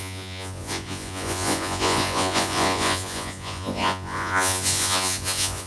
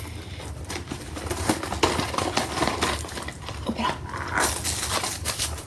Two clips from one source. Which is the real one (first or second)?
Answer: second